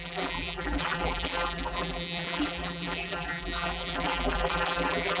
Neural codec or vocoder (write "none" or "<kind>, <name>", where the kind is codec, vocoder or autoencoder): vocoder, BigVGAN v2